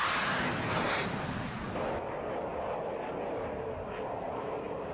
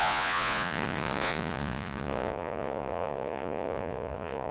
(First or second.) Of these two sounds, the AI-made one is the second